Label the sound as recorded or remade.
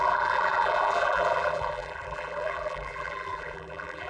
remade